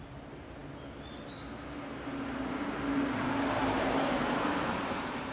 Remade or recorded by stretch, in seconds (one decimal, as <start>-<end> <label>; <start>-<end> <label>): 0.0-3.6 recorded; 3.6-5.3 remade